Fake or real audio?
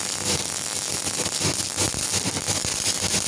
real